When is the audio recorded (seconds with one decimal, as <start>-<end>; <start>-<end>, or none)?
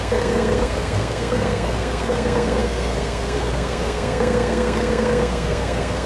none